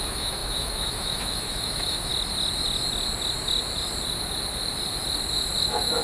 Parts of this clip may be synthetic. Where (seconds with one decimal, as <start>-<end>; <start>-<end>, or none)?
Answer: 0.0-2.1; 5.6-6.0